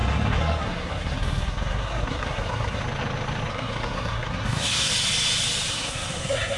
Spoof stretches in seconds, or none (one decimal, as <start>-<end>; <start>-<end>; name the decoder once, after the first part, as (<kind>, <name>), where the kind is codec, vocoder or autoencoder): 0.0-2.8 (codec, SNAC); 3.5-4.9; 5.7-6.6